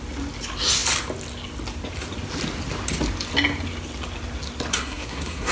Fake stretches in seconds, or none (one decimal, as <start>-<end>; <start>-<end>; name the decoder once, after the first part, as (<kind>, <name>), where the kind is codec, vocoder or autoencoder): 4.7-5.5 (codec, SNAC)